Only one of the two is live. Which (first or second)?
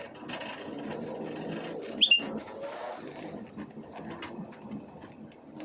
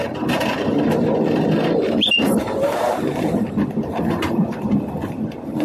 first